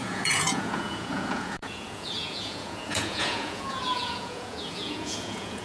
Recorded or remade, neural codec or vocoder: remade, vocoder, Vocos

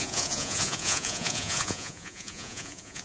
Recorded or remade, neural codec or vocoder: remade, vocoder, Vocos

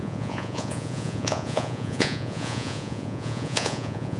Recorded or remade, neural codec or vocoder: remade, vocoder, Vocos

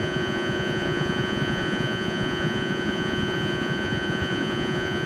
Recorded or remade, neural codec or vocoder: remade, vocoder, Vocos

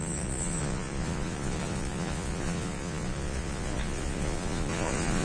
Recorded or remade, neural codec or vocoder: remade, vocoder, Vocos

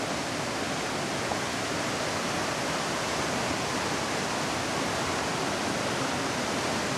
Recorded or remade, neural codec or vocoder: recorded